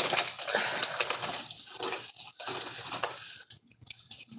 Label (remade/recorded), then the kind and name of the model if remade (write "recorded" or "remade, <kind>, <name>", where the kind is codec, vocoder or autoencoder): recorded